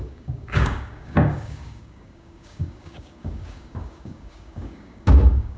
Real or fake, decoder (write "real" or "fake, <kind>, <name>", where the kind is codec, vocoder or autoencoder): fake, codec, DAC